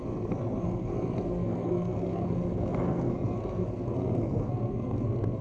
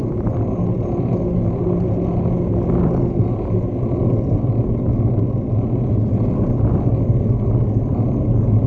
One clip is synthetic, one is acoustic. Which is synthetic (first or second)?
first